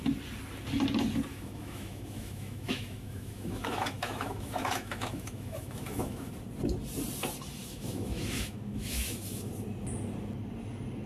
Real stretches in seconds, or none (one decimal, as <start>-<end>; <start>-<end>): 0.0-1.3; 6.3-7.6; 9.5-11.1